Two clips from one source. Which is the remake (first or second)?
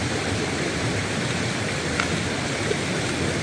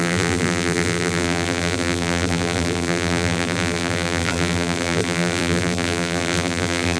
second